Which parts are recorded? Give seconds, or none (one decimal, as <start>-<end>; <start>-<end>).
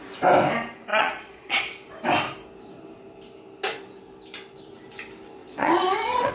0.0-0.9; 1.6-5.4